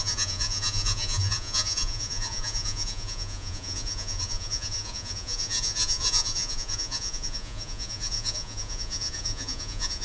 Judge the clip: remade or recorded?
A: remade